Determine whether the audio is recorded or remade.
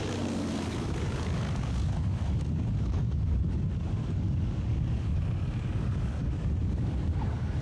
remade